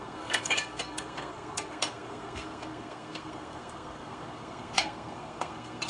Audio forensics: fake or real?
fake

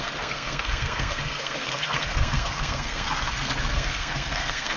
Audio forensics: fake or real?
fake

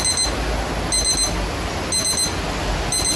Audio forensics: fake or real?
real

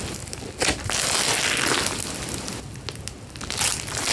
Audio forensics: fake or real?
real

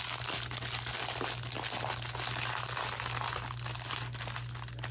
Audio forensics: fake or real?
real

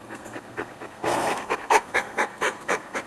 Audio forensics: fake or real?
fake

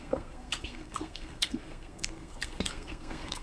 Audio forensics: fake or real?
fake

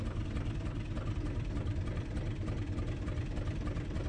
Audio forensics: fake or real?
real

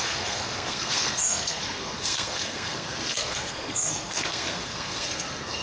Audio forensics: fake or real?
fake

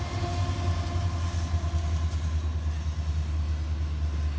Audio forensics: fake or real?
real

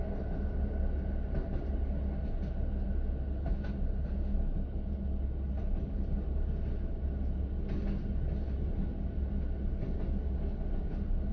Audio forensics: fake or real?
real